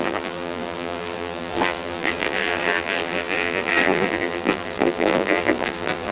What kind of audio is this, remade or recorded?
remade